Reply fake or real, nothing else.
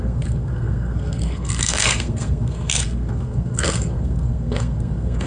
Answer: fake